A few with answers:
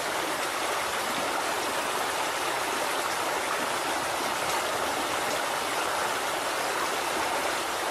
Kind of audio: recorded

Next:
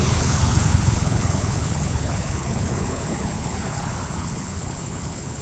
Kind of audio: remade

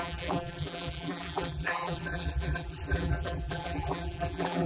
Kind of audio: remade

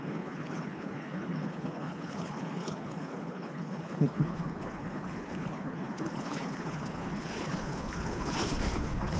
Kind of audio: remade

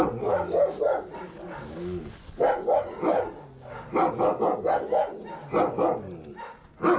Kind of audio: recorded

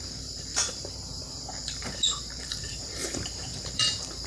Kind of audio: remade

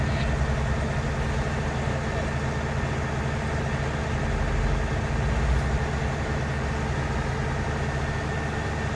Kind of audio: recorded